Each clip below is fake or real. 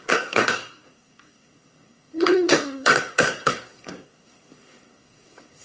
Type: fake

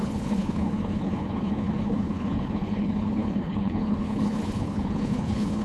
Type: fake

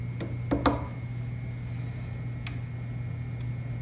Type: real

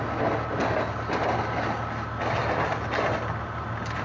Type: real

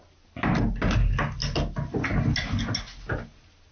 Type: real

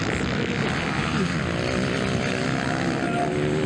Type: real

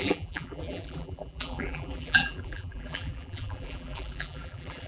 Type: fake